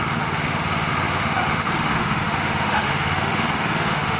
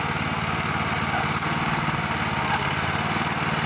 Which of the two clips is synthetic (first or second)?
first